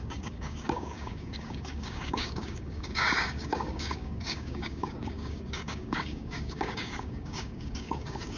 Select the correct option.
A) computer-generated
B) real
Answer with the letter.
A